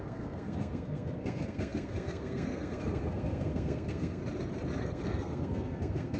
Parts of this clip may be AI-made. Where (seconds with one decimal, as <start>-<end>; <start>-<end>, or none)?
0.0-4.2; 4.8-6.2